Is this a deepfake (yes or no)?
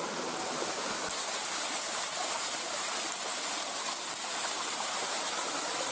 no